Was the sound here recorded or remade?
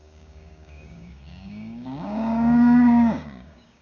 remade